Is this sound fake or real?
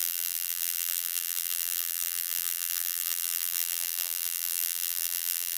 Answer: fake